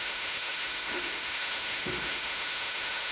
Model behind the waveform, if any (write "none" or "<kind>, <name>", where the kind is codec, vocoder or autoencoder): autoencoder, DAC-VAE